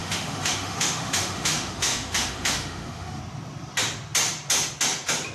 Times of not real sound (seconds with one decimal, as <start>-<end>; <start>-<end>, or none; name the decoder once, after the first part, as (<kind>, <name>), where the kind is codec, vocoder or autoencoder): 0.0-3.2 (autoencoder, DAC-VAE)